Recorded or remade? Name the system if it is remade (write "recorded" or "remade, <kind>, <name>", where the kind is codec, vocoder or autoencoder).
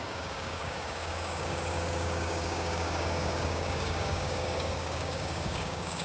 remade, codec, DAC